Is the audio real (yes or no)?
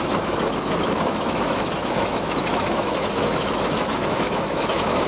no